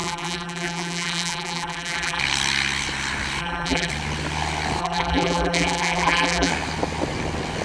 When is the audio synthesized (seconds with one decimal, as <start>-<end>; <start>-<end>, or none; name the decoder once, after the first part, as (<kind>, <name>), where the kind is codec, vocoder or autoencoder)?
0.0-2.2 (vocoder, BigVGAN v2); 3.4-3.9; 4.8-6.5